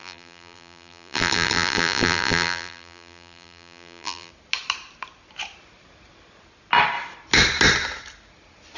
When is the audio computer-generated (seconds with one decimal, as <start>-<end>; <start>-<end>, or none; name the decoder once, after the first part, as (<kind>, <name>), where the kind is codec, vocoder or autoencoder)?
0.0-4.3 (vocoder, BigVGAN v2)